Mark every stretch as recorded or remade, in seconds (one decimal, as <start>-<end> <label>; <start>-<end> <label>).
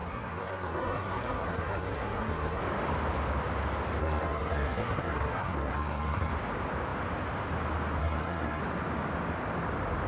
0.0-2.6 remade; 2.6-4.0 recorded; 4.0-6.3 remade; 6.3-8.0 recorded; 8.0-8.6 remade; 8.6-10.1 recorded